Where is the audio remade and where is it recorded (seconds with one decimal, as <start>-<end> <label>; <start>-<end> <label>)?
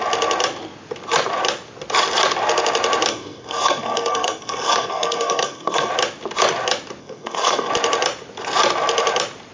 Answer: 0.0-3.1 recorded; 3.1-5.9 remade; 5.9-7.0 recorded; 7.0-7.7 remade; 7.7-9.5 recorded